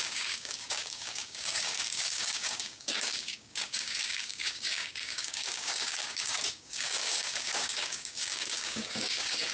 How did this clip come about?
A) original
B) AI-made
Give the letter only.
B